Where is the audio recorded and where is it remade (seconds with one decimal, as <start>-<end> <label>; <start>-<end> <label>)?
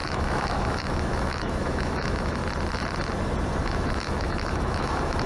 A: 0.0-2.4 remade; 2.4-3.6 recorded; 3.6-5.3 remade